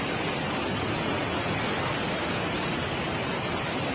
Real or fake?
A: real